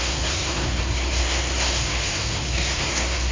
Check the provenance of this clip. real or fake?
fake